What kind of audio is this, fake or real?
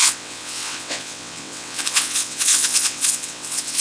fake